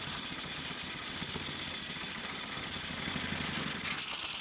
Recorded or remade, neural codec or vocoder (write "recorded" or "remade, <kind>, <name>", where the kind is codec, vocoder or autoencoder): recorded